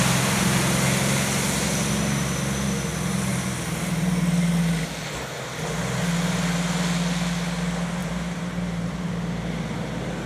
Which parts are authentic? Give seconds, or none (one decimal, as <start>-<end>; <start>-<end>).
0.0-8.0; 9.1-10.3